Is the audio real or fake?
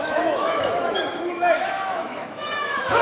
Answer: fake